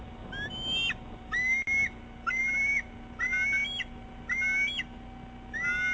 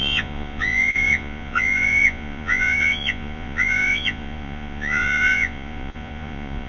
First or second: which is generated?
second